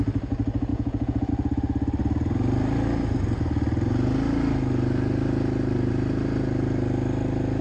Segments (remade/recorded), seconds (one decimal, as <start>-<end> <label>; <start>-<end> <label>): 0.0-0.7 recorded; 0.7-1.3 remade; 1.3-7.6 recorded